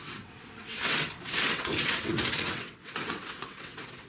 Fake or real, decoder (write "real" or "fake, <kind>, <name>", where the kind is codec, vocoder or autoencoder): fake, vocoder, WaveNeXt